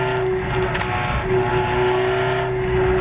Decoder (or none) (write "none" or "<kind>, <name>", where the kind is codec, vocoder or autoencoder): none